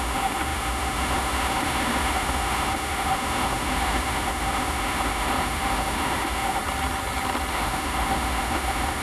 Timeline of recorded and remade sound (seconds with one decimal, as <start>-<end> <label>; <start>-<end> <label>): 0.0-6.6 remade; 6.6-7.5 recorded; 7.5-9.0 remade